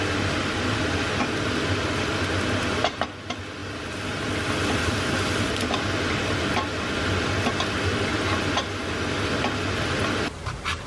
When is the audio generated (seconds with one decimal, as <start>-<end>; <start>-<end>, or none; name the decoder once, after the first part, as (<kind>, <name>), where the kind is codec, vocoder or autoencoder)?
none